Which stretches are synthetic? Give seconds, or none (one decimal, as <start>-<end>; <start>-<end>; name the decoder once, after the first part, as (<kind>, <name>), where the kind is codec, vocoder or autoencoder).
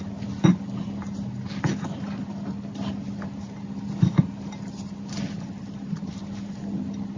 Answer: none